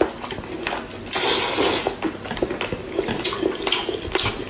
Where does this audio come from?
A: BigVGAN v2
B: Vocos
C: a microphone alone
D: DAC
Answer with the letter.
C